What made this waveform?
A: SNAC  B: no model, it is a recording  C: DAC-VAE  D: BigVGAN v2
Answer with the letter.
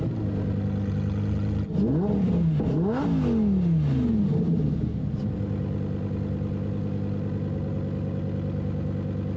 B